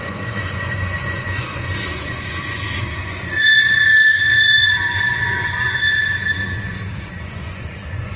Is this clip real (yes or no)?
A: no